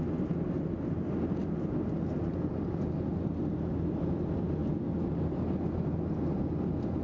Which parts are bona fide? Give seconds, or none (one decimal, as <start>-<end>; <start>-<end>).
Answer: 0.0-7.0